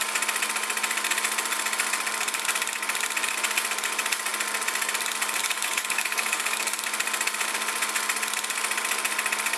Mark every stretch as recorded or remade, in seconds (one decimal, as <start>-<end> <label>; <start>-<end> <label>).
0.0-5.4 recorded; 5.4-6.8 remade; 6.8-9.6 recorded